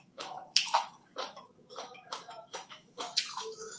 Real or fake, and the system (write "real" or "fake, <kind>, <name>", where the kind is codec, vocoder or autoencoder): fake, autoencoder, DAC-VAE